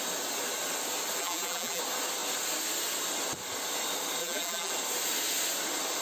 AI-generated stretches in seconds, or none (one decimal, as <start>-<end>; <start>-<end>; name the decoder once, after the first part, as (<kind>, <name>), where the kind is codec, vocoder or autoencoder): 1.2-1.8 (vocoder, BigVGAN v2); 4.2-4.7